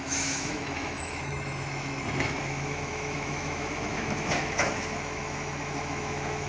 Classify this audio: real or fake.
fake